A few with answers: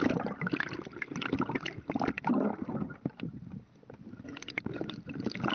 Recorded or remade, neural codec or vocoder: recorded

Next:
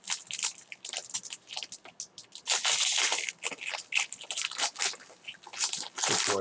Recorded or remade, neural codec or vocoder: recorded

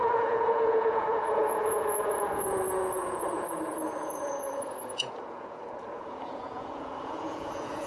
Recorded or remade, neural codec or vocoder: remade, vocoder, Vocos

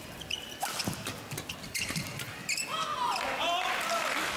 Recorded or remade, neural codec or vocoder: recorded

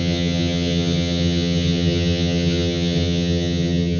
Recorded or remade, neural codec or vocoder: remade, vocoder, HiFi-GAN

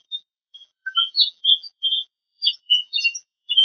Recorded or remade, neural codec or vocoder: remade, vocoder, BigVGAN v2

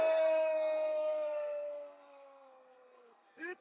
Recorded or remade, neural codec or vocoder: remade, codec, SNAC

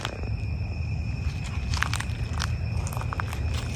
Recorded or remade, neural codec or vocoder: recorded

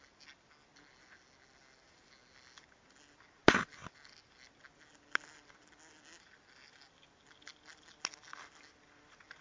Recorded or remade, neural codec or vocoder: recorded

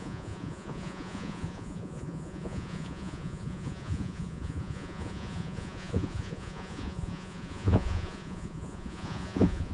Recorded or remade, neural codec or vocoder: remade, vocoder, Vocos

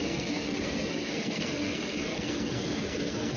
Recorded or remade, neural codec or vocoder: remade, codec, SNAC